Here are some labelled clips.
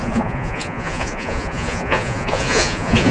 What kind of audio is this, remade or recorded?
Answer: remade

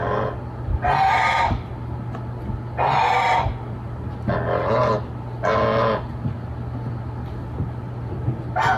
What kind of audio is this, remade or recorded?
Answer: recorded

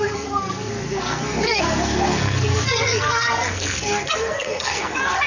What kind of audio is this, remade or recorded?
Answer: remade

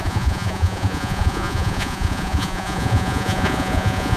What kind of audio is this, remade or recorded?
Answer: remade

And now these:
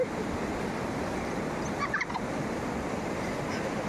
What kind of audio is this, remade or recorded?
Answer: recorded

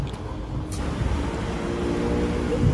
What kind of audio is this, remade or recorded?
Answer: recorded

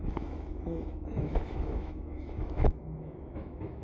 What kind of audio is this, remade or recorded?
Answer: remade